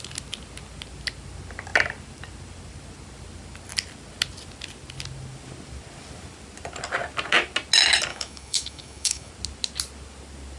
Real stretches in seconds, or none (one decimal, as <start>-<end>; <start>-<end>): 0.0-8.1; 9.3-10.6